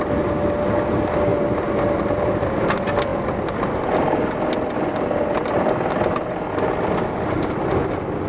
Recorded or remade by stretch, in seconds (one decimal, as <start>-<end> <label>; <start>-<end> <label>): 0.0-8.3 recorded